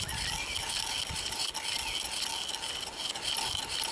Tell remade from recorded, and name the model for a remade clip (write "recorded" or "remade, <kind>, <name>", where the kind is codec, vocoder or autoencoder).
recorded